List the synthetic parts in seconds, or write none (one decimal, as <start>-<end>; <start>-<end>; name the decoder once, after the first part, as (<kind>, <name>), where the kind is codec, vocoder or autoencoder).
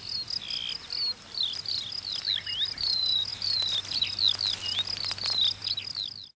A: none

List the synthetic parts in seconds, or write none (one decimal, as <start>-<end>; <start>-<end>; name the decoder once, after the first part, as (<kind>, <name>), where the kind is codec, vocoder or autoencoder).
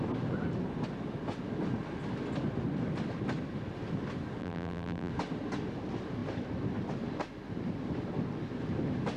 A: 4.4-5.1 (vocoder, BigVGAN v2)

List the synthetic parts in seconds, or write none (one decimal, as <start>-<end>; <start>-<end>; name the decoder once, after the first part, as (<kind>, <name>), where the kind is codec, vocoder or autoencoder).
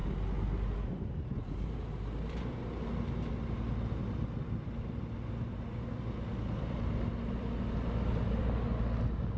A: none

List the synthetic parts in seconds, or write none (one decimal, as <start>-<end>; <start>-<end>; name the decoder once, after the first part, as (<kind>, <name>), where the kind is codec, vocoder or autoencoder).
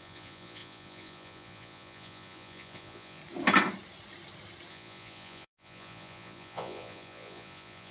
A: 0.0-3.2 (vocoder, Vocos); 4.7-7.9